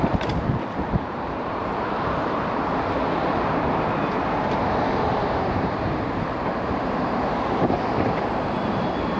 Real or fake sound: fake